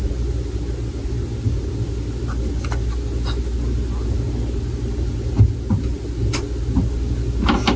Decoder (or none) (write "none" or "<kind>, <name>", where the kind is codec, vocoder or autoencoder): none